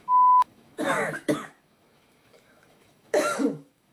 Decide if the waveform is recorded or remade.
remade